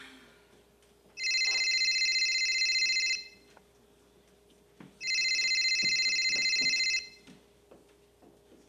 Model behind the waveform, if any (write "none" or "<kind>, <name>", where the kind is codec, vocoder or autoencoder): none